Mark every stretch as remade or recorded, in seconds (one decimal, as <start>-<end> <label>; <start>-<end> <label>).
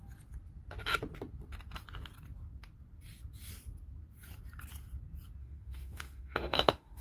0.0-5.4 recorded; 5.4-7.0 remade